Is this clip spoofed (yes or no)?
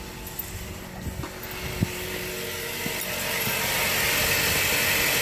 no